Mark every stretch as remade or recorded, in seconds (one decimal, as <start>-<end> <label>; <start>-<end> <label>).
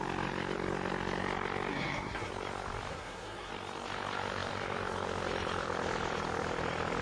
0.0-1.7 recorded; 1.7-2.3 remade; 2.3-2.9 recorded; 2.9-3.5 remade; 3.5-7.0 recorded